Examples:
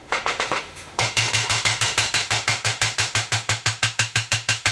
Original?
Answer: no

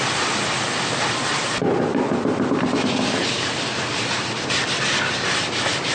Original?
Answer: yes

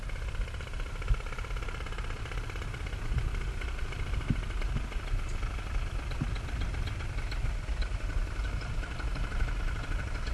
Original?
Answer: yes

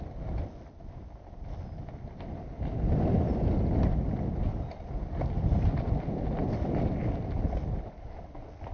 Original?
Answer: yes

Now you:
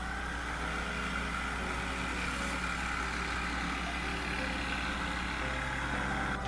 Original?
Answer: yes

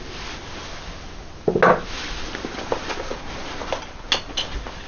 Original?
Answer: yes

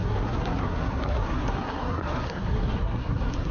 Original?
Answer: no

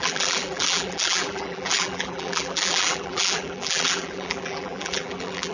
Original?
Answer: no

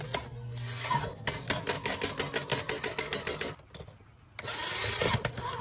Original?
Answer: yes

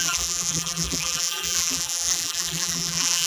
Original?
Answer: no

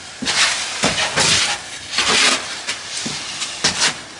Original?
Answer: yes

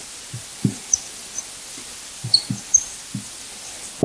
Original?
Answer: yes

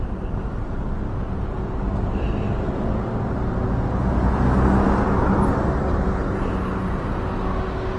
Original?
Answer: yes